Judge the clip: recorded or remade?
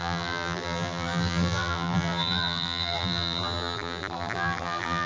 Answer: remade